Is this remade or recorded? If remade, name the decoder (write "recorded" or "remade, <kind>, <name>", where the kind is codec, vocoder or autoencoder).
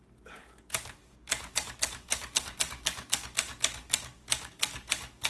remade, codec, DAC